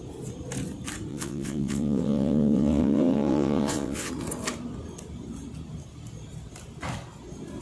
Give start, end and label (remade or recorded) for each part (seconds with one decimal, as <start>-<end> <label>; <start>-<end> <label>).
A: 0.0-1.1 recorded; 1.1-4.1 remade; 4.1-7.6 recorded